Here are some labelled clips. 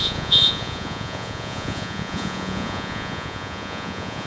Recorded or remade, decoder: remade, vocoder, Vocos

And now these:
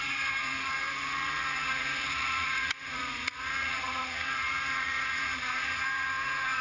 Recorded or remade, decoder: remade, vocoder, Vocos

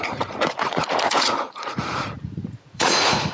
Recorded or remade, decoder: remade, vocoder, Vocos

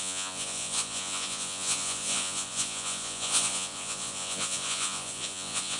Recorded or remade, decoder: remade, vocoder, Vocos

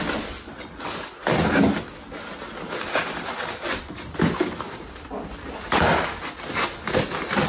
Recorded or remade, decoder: recorded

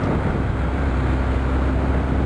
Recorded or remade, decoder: recorded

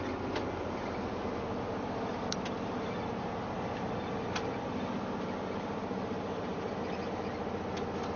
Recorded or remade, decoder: recorded